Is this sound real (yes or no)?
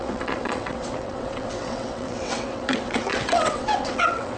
no